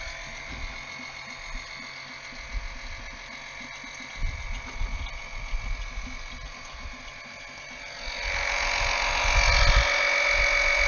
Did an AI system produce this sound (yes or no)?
no